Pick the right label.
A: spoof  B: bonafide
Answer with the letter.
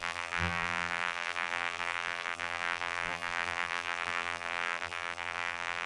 A